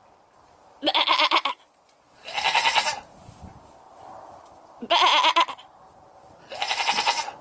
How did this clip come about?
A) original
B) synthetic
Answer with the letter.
A